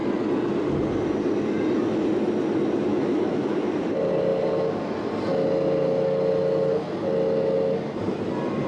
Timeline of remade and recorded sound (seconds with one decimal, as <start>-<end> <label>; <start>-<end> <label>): 0.0-2.9 recorded; 2.9-3.8 remade; 3.8-8.7 recorded